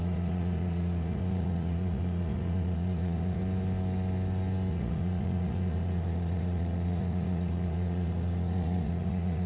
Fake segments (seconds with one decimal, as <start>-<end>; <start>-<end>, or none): 0.0-3.4; 4.7-9.5